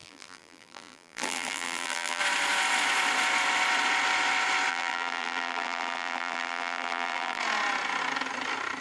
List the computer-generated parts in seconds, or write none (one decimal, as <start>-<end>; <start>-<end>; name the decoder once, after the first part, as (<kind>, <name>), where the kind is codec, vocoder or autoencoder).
0.0-2.2 (vocoder, BigVGAN v2); 4.7-7.4